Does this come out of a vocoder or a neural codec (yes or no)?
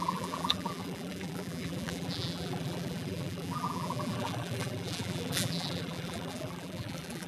yes